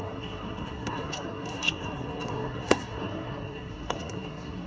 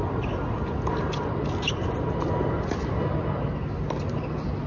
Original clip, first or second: second